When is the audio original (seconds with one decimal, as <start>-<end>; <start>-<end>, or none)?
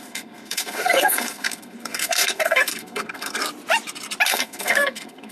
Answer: 3.4-4.3